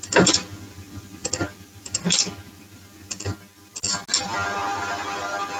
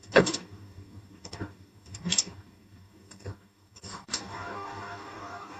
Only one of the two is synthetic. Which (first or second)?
second